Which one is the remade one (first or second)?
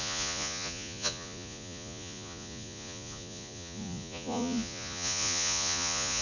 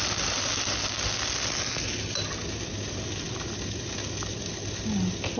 first